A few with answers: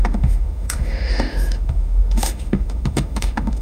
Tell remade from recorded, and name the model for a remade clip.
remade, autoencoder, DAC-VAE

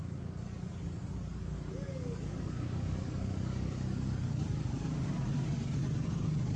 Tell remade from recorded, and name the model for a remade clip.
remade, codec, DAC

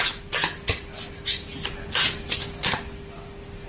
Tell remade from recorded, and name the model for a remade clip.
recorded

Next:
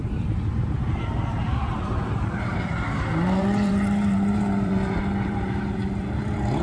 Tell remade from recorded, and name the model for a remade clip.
remade, vocoder, BigVGAN v2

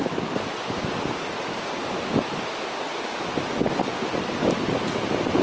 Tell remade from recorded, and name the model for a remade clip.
recorded